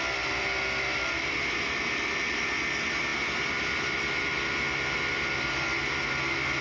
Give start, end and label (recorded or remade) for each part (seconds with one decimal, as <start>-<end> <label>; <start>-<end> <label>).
0.0-6.6 recorded